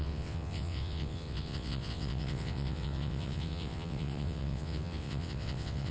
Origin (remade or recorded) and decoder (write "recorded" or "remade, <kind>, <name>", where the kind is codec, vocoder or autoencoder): remade, vocoder, WaveNeXt